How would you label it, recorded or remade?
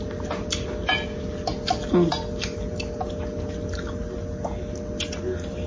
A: recorded